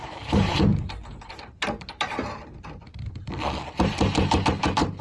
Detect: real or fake fake